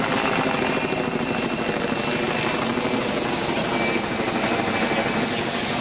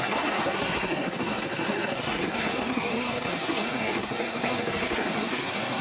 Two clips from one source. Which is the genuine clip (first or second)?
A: first